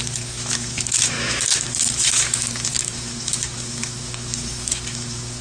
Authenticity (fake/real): fake